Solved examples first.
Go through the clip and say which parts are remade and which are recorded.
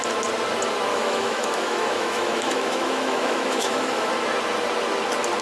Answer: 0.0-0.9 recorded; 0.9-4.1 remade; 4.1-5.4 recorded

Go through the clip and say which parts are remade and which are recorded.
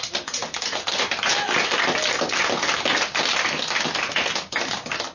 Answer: 0.0-5.1 recorded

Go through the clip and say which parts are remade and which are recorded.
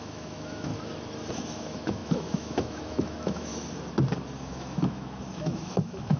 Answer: 0.0-0.7 remade; 0.7-1.3 recorded; 1.3-3.5 remade; 3.5-4.4 recorded; 4.4-6.2 remade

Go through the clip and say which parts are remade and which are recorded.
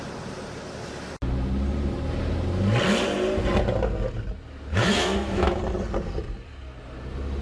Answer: 0.0-4.7 recorded; 4.7-5.6 remade; 5.6-7.4 recorded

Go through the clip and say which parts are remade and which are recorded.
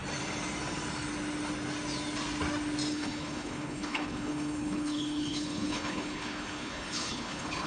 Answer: 0.0-2.9 recorded; 2.9-7.7 remade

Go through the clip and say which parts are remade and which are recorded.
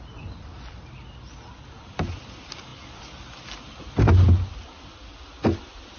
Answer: 0.0-6.0 recorded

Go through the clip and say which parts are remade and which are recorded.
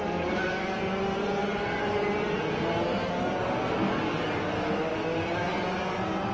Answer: 0.0-6.3 recorded